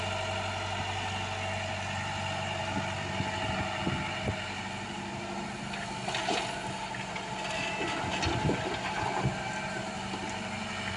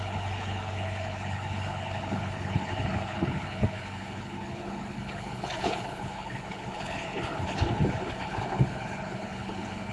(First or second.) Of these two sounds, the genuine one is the first